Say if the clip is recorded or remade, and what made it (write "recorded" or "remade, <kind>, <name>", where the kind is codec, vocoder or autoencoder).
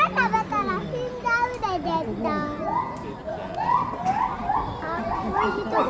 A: recorded